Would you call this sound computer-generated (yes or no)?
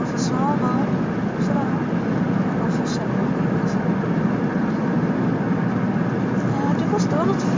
no